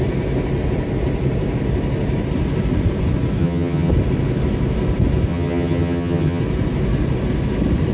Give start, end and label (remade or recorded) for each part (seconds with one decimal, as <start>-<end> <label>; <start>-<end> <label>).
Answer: 0.0-3.4 recorded; 3.4-3.9 remade; 3.9-5.3 recorded; 5.3-6.4 remade; 6.4-7.9 recorded